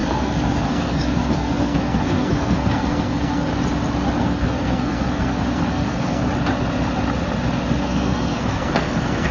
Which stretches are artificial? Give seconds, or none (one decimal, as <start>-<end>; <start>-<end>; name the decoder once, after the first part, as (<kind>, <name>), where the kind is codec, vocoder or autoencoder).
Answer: 0.0-3.5 (codec, SNAC); 4.2-6.2; 7.8-9.3